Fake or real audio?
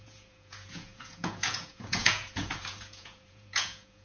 fake